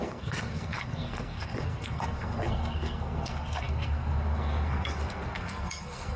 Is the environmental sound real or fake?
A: fake